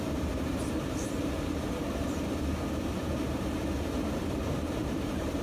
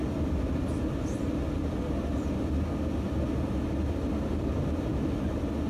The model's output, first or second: first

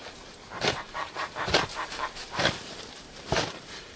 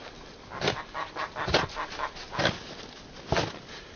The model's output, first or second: first